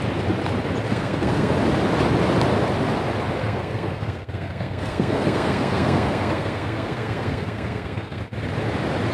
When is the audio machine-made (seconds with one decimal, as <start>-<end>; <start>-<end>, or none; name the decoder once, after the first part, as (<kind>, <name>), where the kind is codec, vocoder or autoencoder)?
0.9-1.5 (codec, SNAC); 3.4-8.2